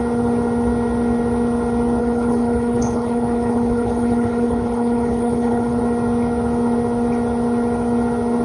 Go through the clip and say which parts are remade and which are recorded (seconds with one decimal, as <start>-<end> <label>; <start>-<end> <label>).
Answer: 0.0-2.0 recorded; 2.0-5.8 remade; 5.8-8.4 recorded